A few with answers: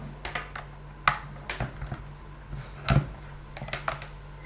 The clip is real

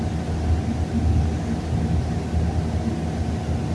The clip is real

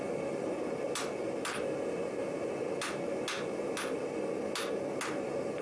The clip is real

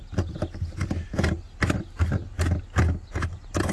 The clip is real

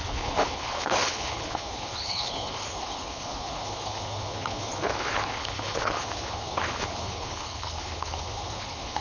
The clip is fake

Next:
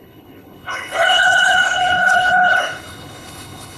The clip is fake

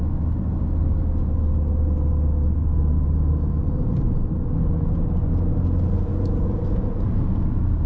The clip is real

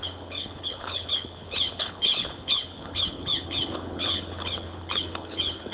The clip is fake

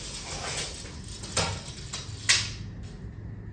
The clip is real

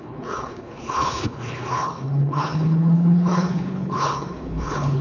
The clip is fake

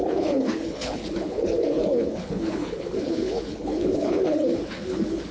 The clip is fake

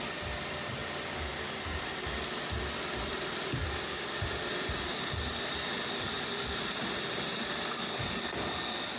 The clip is real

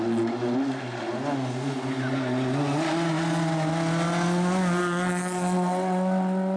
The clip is real